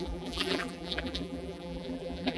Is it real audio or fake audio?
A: fake